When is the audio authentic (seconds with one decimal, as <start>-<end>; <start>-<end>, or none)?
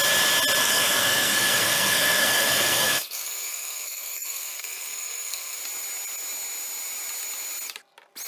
0.0-0.6; 5.6-8.3